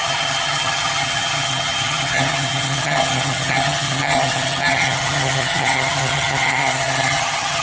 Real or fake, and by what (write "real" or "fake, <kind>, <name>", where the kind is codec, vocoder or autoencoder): fake, vocoder, HiFi-GAN